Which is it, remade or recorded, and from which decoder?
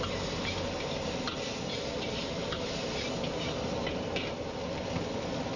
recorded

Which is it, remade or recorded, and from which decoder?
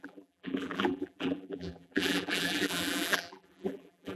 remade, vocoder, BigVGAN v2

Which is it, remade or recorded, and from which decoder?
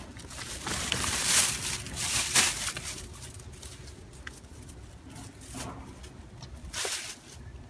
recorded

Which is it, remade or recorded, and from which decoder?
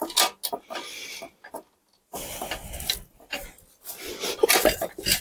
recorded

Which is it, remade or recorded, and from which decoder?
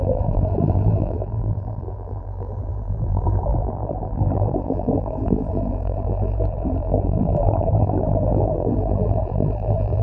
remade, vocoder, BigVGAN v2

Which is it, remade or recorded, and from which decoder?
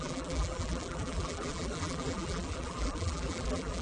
remade, vocoder, BigVGAN v2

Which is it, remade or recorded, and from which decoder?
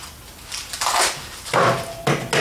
recorded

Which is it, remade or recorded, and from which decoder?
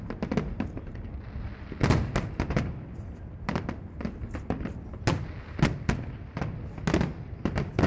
recorded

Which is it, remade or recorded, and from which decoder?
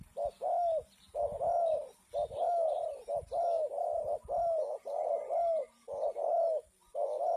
recorded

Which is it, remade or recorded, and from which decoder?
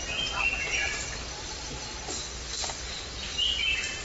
recorded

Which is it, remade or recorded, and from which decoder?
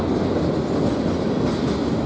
recorded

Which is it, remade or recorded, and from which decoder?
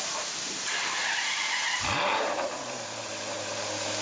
remade, vocoder, BigVGAN v2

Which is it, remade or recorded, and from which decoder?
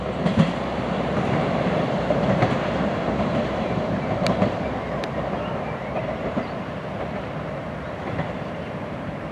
remade, vocoder, BigVGAN v2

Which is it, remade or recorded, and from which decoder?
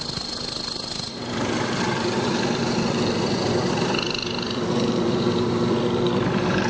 remade, vocoder, BigVGAN v2